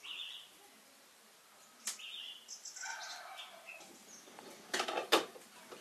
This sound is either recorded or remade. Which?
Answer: recorded